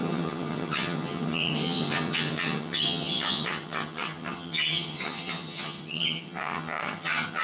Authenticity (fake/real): fake